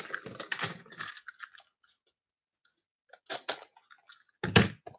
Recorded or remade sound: recorded